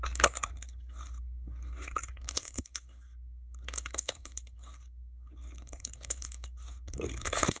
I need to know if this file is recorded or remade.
remade